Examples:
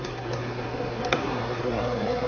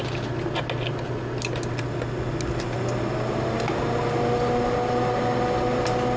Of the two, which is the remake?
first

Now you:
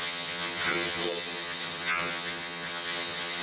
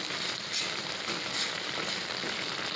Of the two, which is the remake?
first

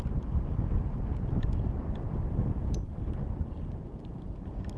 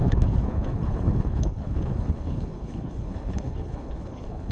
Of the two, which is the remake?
second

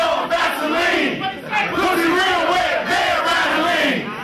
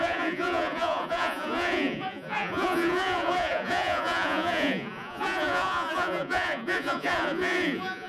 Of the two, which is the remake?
second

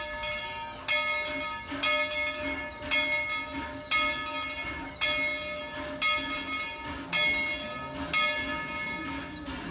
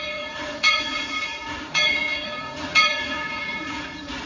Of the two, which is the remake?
second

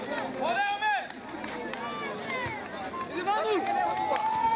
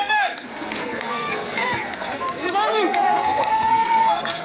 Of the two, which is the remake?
second